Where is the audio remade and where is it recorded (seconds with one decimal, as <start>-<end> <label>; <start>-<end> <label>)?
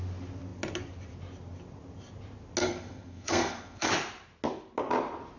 0.0-2.6 recorded; 2.6-3.9 remade; 3.9-5.4 recorded